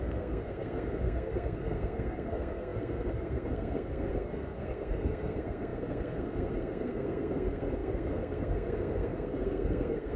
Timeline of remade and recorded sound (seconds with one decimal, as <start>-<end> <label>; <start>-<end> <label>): 0.0-10.2 remade